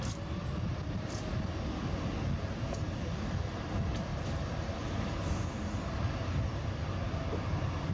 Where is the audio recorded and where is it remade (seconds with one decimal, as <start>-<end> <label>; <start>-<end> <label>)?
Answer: 0.0-7.9 recorded